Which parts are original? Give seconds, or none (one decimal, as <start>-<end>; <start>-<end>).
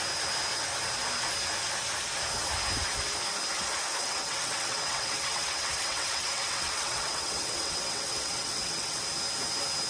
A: 0.0-4.0; 9.0-9.9